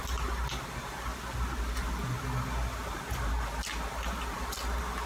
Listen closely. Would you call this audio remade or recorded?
recorded